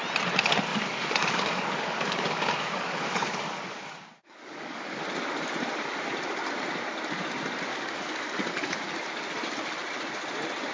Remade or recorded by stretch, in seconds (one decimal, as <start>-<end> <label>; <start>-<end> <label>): 0.0-0.7 recorded; 0.7-5.0 remade; 5.0-7.7 recorded; 7.7-8.8 remade; 8.8-10.7 recorded